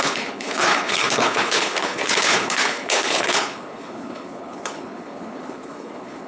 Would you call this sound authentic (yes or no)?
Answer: no